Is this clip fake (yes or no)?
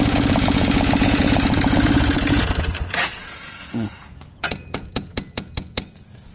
yes